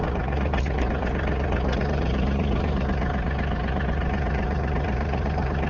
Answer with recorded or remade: remade